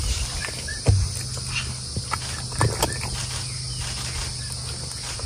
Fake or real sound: real